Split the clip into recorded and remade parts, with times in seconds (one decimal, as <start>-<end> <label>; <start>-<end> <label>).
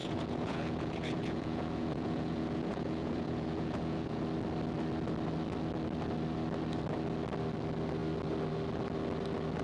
0.0-4.2 remade; 4.2-9.6 recorded